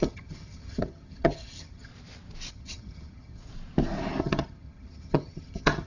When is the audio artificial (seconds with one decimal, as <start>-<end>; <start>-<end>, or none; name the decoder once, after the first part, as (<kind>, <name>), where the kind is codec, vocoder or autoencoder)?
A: 0.0-1.9 (vocoder, HiFi-GAN); 2.5-3.4; 4.2-5.9